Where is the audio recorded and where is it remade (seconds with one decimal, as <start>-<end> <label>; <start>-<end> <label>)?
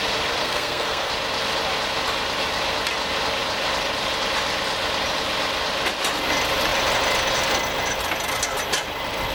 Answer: 0.0-0.4 recorded; 0.4-1.1 remade; 1.1-9.3 recorded